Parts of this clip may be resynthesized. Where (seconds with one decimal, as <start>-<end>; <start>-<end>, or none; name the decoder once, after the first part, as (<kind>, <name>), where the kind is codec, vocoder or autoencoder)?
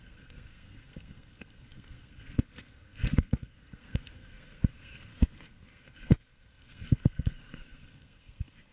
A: 0.0-8.7 (codec, SNAC)